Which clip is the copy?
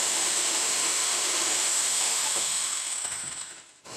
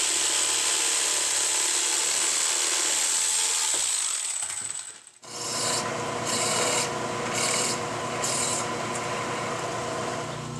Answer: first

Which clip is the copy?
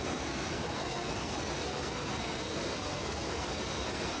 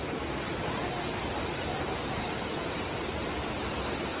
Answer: first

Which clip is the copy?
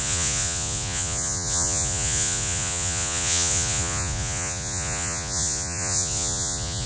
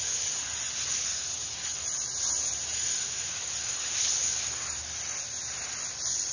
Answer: first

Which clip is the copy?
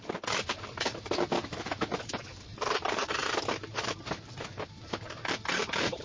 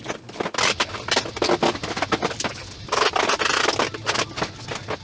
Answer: first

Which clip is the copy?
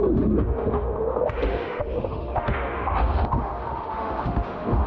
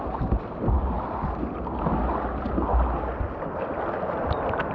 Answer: first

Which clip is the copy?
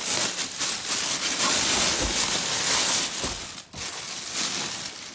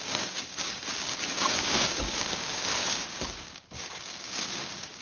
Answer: second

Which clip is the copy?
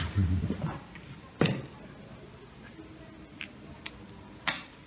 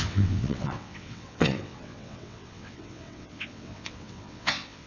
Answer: second